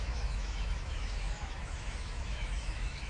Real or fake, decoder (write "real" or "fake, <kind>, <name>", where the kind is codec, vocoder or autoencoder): fake, autoencoder, DAC-VAE